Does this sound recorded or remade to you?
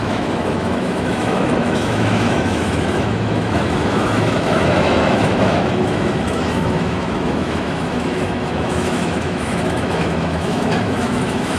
remade